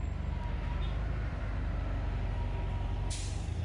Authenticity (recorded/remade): recorded